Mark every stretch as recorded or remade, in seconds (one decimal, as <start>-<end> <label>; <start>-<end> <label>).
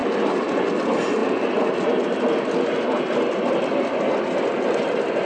0.0-0.7 remade; 0.7-5.3 recorded